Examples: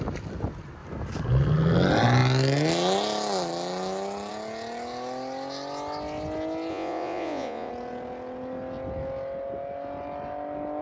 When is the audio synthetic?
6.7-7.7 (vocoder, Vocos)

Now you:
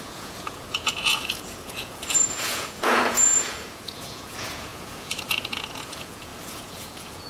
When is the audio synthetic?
0.0-7.3 (vocoder, Vocos)

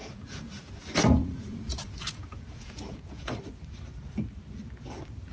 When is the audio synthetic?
0.0-0.7 (vocoder, Vocos); 1.2-3.3

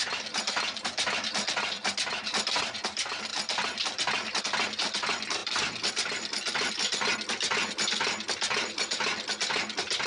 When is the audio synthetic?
none

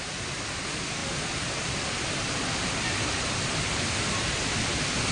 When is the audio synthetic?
none

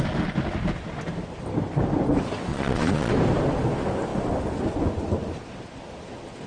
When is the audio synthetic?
2.5-3.1 (vocoder, Vocos)